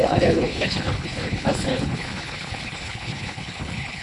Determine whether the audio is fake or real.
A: fake